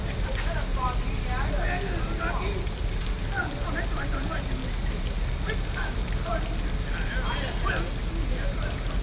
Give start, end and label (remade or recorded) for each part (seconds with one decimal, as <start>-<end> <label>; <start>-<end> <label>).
0.0-0.7 recorded; 0.7-1.5 remade; 1.5-3.4 recorded; 3.4-4.1 remade; 4.1-9.0 recorded